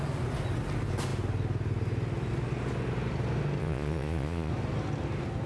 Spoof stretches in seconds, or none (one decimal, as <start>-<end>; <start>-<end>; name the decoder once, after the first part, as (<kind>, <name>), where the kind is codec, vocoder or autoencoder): 3.6-4.5 (vocoder, Vocos)